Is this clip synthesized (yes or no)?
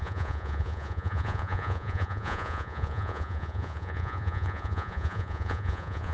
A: yes